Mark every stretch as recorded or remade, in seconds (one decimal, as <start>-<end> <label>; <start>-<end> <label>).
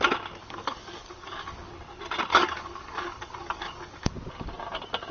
0.0-0.4 recorded; 0.4-1.7 remade; 1.7-2.3 recorded; 2.3-4.1 remade; 4.1-5.1 recorded